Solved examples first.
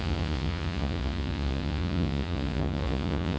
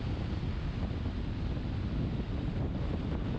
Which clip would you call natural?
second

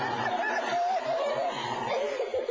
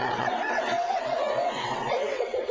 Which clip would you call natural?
first